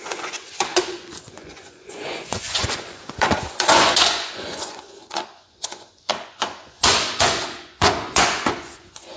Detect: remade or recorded remade